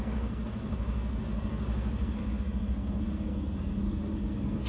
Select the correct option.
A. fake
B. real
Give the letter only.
A